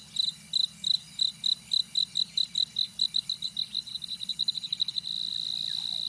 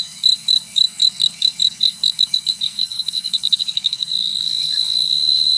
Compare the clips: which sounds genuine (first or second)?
first